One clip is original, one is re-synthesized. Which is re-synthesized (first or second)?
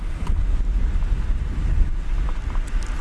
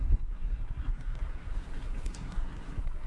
second